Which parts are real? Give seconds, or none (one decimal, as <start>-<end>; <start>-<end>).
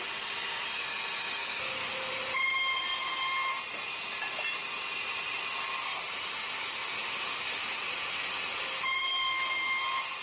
0.0-1.4; 2.1-10.2